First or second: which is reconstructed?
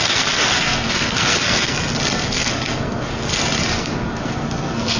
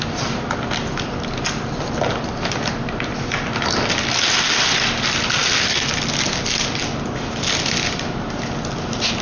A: first